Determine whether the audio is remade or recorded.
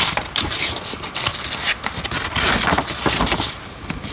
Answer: recorded